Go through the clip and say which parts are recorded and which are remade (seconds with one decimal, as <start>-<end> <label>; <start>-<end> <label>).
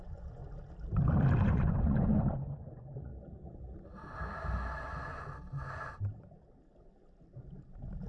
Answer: 0.0-0.4 remade; 0.4-1.4 recorded; 1.4-3.1 remade; 3.1-8.1 recorded